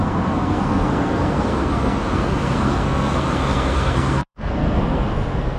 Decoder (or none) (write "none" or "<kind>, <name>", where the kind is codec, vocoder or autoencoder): codec, SNAC